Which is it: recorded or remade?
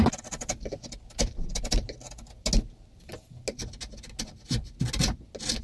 recorded